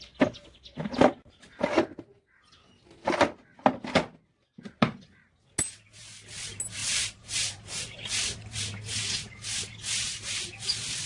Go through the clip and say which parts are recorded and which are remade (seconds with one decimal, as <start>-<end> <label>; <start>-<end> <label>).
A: 0.0-6.8 recorded; 6.8-8.1 remade; 8.1-11.1 recorded